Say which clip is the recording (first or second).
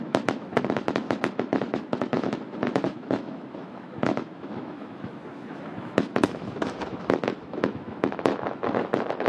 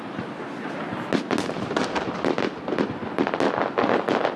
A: second